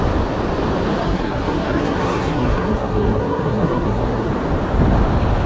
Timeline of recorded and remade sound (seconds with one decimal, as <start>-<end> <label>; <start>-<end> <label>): 0.0-1.0 recorded; 1.0-4.3 remade; 4.3-5.5 recorded